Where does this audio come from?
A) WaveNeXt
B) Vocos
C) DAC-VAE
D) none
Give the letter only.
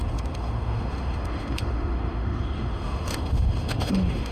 C